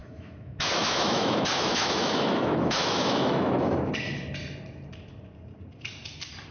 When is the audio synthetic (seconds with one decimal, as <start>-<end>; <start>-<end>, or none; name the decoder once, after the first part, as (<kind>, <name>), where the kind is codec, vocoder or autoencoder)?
0.0-3.9 (autoencoder, DAC-VAE)